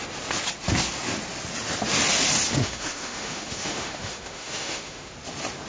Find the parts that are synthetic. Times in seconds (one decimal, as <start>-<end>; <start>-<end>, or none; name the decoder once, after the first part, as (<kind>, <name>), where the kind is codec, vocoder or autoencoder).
2.6-5.1 (autoencoder, DAC-VAE)